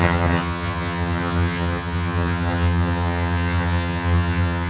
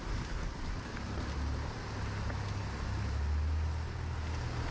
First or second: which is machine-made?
first